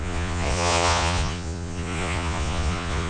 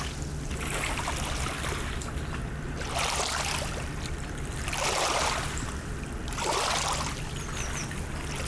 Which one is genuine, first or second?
second